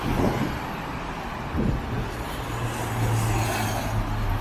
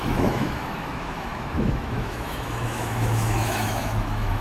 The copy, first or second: second